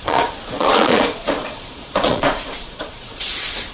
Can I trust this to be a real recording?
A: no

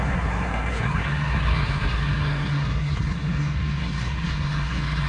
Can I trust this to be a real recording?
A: no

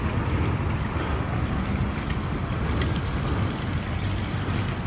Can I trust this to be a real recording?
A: yes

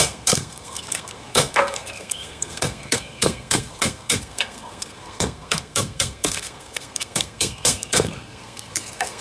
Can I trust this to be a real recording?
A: no